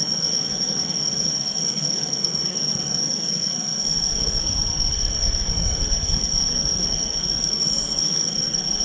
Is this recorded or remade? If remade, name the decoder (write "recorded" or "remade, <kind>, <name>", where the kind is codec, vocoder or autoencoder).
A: remade, codec, SNAC